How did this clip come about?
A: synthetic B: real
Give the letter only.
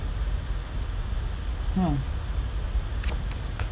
B